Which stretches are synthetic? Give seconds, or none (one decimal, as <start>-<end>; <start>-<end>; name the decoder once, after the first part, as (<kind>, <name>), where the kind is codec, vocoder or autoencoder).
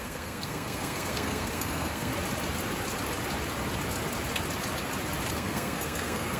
0.0-2.1 (codec, SNAC); 5.3-6.4